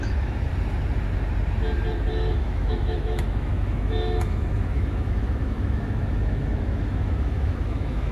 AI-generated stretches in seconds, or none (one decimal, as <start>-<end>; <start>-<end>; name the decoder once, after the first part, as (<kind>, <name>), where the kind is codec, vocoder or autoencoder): 0.0-0.5 (autoencoder, DAC-VAE); 2.1-8.1